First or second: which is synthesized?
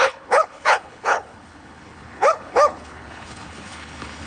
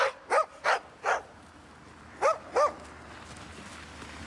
first